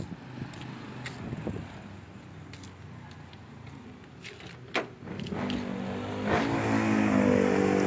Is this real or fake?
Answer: real